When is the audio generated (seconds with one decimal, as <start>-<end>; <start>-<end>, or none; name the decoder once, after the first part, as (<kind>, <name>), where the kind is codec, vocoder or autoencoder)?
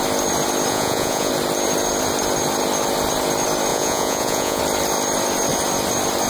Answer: 0.7-1.3 (vocoder, Vocos); 3.7-4.6